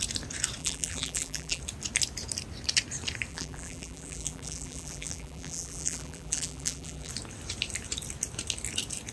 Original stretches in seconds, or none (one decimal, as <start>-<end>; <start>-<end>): 0.0-0.6; 1.6-3.3; 7.1-9.1